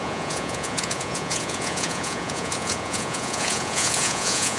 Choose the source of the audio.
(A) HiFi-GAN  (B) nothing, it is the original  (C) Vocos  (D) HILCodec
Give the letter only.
C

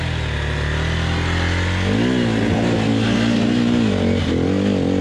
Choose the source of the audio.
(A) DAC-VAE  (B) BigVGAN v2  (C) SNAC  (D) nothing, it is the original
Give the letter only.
D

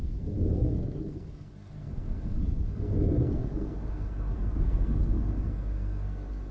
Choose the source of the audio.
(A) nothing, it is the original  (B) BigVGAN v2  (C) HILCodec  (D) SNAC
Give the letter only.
D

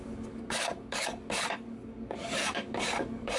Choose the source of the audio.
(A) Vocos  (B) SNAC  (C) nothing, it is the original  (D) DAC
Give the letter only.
D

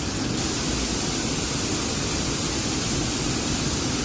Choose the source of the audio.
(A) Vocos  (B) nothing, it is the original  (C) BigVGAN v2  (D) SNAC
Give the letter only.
B